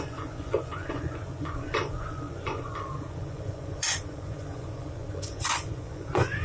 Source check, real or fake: fake